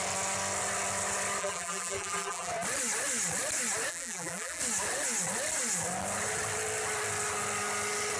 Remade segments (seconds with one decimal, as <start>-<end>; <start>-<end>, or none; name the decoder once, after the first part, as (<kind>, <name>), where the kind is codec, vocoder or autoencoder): 1.4-2.5 (vocoder, BigVGAN v2); 3.9-4.6